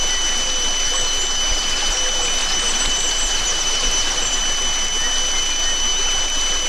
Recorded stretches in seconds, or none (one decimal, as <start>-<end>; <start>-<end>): 0.0-1.5; 2.0-2.4; 4.4-6.7